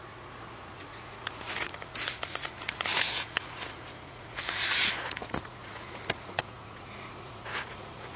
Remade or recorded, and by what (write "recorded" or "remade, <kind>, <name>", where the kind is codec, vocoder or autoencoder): remade, vocoder, Vocos